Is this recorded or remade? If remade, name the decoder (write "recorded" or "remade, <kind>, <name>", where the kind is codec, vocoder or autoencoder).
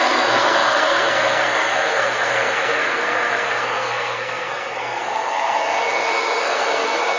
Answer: remade, codec, SNAC